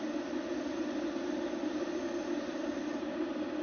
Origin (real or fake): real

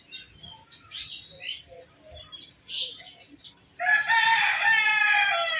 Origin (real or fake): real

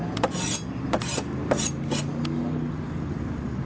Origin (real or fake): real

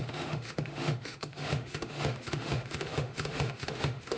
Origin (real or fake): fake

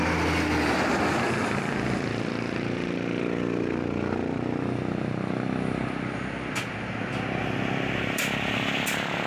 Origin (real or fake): real